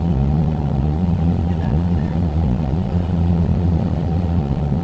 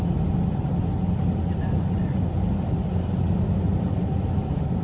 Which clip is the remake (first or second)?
first